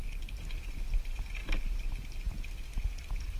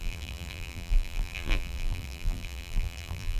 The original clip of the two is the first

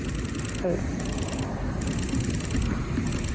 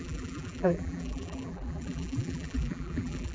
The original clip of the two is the first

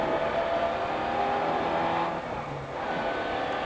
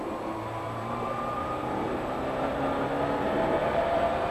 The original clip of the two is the first